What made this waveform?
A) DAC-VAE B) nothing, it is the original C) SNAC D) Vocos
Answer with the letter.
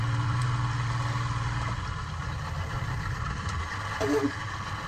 B